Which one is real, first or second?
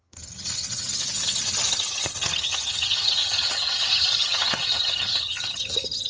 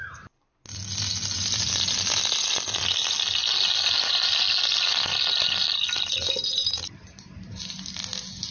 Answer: second